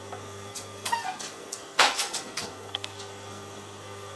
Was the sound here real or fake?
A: fake